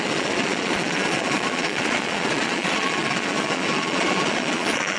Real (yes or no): no